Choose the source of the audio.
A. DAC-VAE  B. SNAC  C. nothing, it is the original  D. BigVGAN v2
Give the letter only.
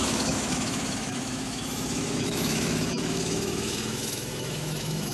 A